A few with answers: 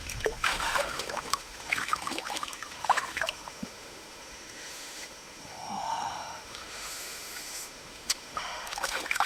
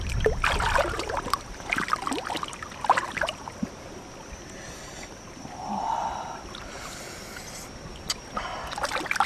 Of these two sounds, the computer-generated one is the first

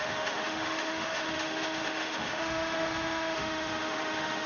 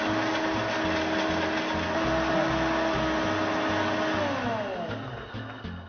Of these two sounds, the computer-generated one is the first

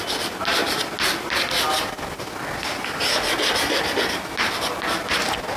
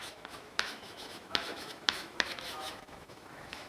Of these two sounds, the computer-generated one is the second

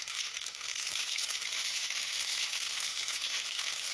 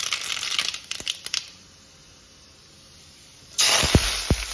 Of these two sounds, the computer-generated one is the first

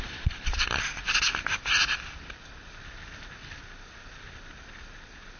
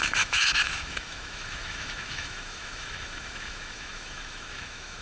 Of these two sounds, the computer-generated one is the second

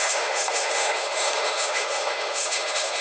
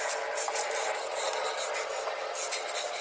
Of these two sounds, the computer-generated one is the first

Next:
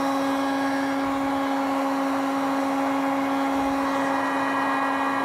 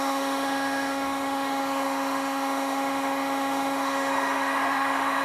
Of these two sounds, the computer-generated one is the second